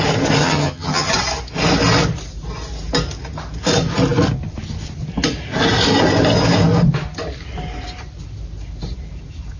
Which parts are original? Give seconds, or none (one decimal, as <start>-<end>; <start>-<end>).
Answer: 0.0-0.4; 1.1-9.6